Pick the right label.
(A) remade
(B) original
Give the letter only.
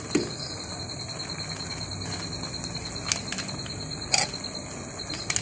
B